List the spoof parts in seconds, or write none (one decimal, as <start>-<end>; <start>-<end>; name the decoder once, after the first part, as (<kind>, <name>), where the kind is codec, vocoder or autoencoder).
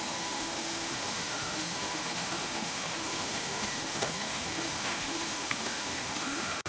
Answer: 0.0-6.7 (autoencoder, DAC-VAE)